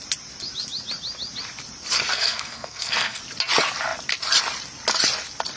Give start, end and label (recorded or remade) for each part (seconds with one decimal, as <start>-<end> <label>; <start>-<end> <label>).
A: 0.0-2.1 recorded; 2.1-3.2 remade; 3.2-5.6 recorded